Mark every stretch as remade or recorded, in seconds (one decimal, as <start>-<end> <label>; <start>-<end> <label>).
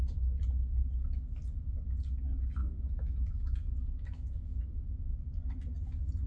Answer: 0.0-2.6 recorded; 2.6-4.6 remade; 4.6-6.3 recorded